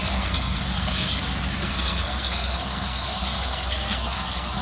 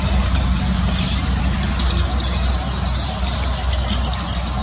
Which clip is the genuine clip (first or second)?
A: second